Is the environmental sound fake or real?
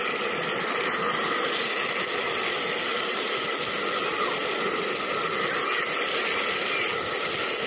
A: real